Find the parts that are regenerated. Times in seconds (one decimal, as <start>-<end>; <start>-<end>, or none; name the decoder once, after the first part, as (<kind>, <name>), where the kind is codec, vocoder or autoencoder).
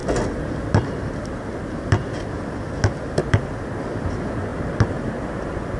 none